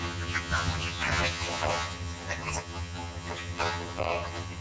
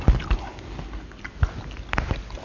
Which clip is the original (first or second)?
second